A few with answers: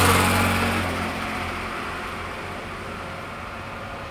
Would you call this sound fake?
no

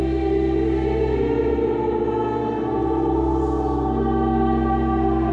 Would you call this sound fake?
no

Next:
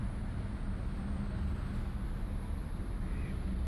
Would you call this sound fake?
no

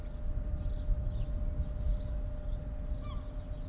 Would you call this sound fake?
no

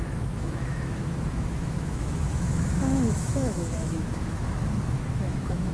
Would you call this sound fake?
yes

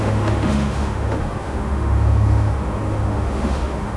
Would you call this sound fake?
yes